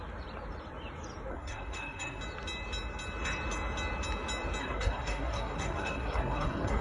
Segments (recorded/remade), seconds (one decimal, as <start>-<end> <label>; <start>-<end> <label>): 0.0-1.3 recorded; 1.3-2.2 remade; 2.2-4.6 recorded; 4.6-6.8 remade